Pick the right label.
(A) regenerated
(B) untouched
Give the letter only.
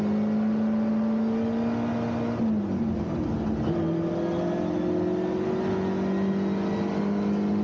B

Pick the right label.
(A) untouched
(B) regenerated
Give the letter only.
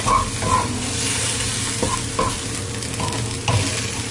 A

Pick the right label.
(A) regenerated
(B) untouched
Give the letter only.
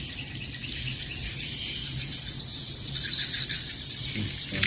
B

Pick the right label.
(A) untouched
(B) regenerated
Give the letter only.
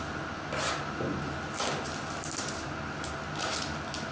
A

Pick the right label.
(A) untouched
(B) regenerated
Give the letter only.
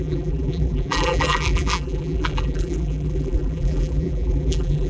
B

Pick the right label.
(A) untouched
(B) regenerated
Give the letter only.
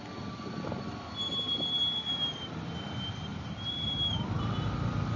A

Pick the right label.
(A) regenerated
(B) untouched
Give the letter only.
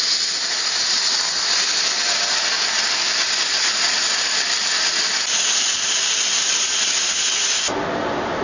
B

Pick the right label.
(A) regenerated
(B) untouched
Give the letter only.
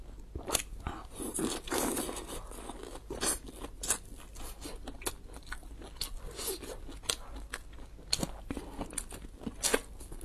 B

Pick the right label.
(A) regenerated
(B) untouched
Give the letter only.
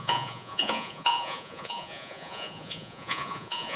A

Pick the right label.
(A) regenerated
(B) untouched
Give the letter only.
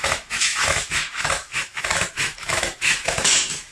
A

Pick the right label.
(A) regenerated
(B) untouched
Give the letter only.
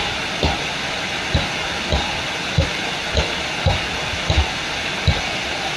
B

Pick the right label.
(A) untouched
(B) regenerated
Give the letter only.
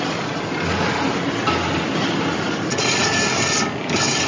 A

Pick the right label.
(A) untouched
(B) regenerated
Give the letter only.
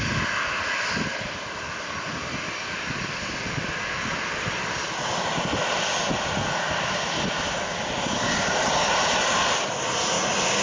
A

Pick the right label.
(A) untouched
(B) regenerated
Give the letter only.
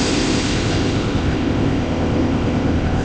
B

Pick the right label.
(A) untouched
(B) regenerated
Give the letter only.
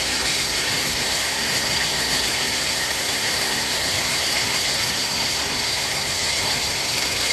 B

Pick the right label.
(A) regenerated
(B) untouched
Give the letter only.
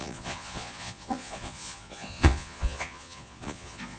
A